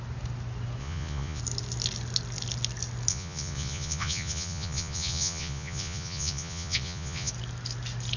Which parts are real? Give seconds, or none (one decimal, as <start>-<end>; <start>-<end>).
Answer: 0.0-0.8; 1.4-3.1; 7.3-8.2